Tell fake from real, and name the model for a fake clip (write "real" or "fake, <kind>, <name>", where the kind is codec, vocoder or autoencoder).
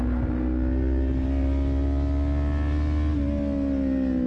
real